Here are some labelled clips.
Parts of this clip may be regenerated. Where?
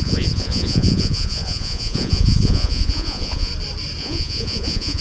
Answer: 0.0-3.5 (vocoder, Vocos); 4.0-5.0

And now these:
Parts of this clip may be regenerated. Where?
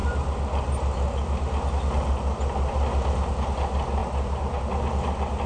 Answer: none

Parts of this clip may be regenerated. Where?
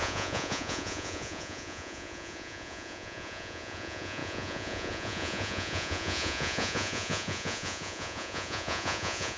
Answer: 0.0-9.4 (vocoder, Vocos)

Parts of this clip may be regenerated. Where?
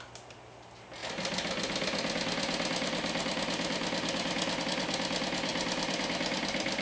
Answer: none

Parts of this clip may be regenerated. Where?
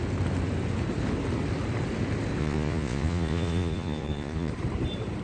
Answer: 2.4-4.5 (vocoder, Vocos)